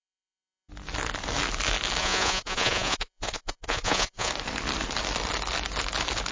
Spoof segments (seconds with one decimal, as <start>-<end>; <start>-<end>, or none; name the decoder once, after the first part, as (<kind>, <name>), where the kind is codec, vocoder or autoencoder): 0.0-0.7 (vocoder, Vocos); 2.0-4.3